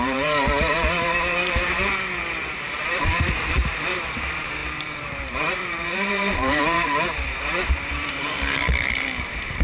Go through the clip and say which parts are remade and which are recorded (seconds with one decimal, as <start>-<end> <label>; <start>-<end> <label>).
0.0-9.6 remade